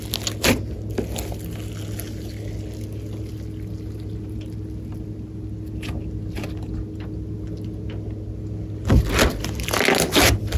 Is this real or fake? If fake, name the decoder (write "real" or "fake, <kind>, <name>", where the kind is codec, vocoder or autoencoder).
real